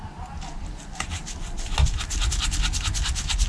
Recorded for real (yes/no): yes